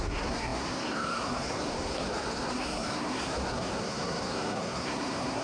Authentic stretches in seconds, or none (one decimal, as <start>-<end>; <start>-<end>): none